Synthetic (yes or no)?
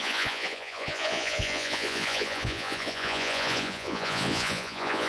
yes